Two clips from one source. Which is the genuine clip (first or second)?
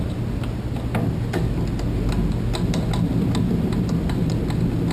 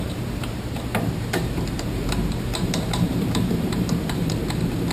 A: first